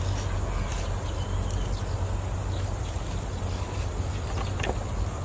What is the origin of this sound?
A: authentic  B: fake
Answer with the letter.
A